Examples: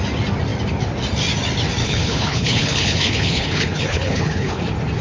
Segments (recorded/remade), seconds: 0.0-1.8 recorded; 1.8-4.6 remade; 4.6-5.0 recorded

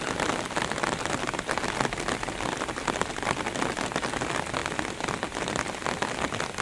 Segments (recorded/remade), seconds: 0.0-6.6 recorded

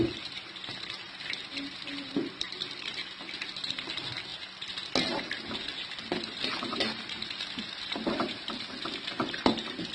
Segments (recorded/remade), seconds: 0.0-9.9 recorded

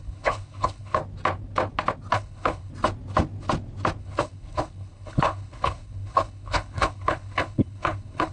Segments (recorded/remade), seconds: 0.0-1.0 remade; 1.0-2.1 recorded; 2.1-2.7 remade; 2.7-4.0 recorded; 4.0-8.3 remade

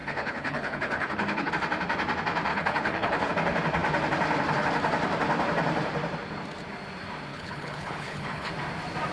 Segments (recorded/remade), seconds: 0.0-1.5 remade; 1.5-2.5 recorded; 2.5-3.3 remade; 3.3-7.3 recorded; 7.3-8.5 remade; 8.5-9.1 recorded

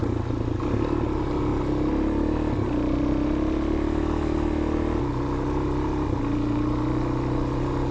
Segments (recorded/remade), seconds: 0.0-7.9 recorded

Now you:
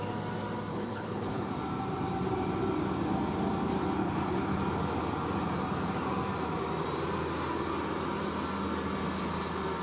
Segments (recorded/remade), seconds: 0.0-0.7 recorded; 0.7-1.5 remade; 1.5-4.0 recorded; 4.0-4.6 remade; 4.6-9.8 recorded